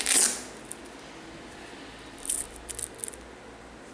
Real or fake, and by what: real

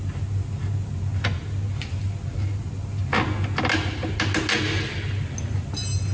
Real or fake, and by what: real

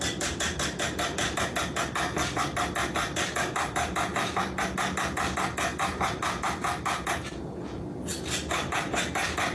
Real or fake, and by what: real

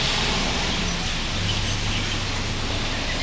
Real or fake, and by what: real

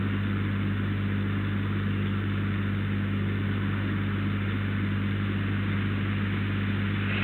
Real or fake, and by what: real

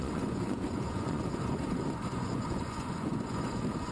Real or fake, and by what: fake, vocoder, Vocos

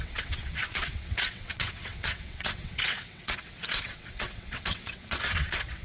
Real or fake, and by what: fake, vocoder, WaveNeXt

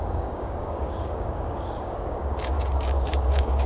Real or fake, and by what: fake, codec, DAC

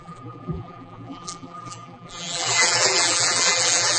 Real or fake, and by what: fake, vocoder, BigVGAN v2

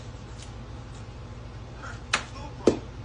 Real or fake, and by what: real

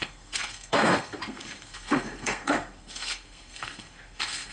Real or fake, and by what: fake, codec, SNAC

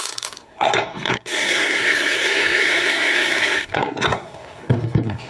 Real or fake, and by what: fake, codec, SNAC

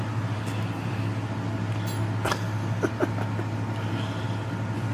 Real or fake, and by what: real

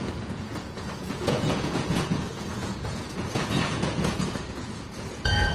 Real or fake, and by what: fake, vocoder, Vocos